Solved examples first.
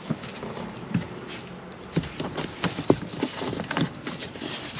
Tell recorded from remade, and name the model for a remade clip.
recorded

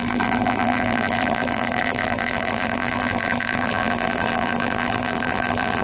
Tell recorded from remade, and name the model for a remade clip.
remade, vocoder, BigVGAN v2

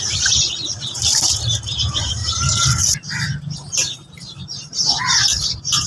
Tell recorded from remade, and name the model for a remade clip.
remade, vocoder, BigVGAN v2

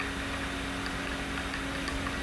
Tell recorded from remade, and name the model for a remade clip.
recorded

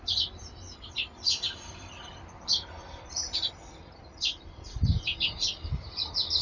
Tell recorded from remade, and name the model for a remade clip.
remade, vocoder, BigVGAN v2